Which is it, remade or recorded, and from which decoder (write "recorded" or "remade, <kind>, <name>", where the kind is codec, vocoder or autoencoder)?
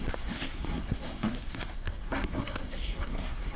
remade, codec, SNAC